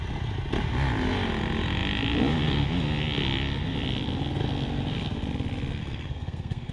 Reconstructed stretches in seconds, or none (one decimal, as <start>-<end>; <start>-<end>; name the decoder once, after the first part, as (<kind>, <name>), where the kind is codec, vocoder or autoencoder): 5.8-6.7 (codec, SNAC)

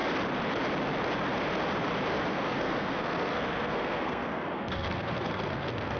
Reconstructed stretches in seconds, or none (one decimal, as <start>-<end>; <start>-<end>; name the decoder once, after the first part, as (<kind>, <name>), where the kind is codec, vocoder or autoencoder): 2.3-6.0 (codec, SNAC)

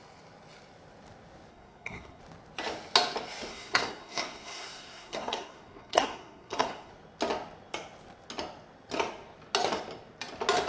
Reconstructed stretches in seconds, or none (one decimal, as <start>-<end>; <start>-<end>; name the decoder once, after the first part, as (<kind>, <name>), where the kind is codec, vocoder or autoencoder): 1.5-2.2 (codec, SNAC); 3.5-6.9

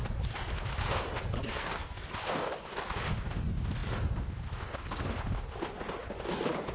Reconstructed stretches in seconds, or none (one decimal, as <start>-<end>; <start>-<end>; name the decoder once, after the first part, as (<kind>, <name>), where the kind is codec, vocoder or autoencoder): 1.5-2.1 (codec, SNAC)